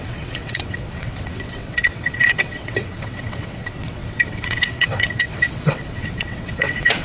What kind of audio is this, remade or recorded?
remade